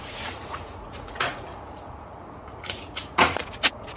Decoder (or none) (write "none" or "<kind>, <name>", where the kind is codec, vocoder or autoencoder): vocoder, Vocos